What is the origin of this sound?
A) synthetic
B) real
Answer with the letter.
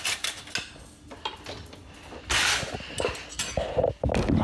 B